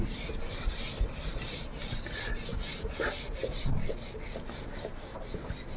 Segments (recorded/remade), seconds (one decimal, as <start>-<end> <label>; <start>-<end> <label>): 0.0-5.8 recorded